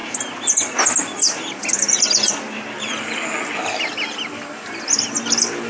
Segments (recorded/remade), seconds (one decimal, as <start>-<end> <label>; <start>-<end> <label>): 0.0-5.7 recorded